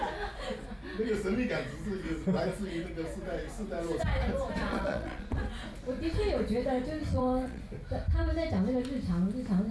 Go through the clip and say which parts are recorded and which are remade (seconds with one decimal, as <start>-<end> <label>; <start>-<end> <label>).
0.0-4.7 recorded; 4.7-5.4 remade; 5.4-7.1 recorded; 7.1-7.6 remade; 7.6-9.7 recorded

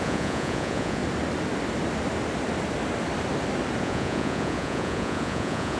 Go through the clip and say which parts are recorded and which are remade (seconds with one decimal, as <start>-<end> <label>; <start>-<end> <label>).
0.0-1.0 remade; 1.0-3.8 recorded; 3.8-5.8 remade

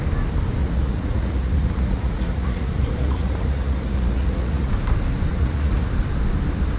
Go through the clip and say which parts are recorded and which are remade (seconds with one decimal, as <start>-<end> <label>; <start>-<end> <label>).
0.0-0.6 recorded; 0.6-4.7 remade; 4.7-5.3 recorded; 5.3-5.9 remade; 5.9-6.8 recorded

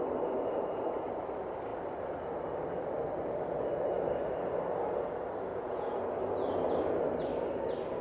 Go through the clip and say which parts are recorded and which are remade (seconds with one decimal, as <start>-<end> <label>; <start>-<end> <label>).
0.0-5.5 recorded; 5.5-6.0 remade; 6.0-8.0 recorded

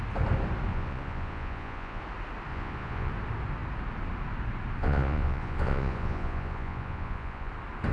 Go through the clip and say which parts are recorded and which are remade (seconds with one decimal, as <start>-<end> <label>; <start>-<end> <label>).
0.0-0.7 recorded; 0.7-2.0 remade; 2.0-2.5 recorded; 2.5-3.1 remade; 3.1-4.8 recorded; 4.8-7.5 remade; 7.5-7.9 recorded

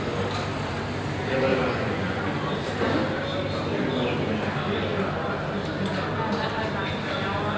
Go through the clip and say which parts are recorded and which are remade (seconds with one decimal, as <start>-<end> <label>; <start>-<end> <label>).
0.0-1.5 recorded; 1.5-2.2 remade; 2.2-7.6 recorded

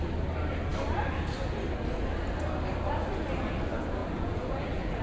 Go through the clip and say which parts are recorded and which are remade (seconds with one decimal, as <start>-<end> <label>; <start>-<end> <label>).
0.0-4.0 recorded; 4.0-5.0 remade